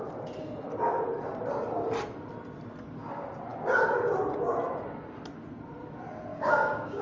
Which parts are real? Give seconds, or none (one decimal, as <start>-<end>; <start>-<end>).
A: 0.0-6.3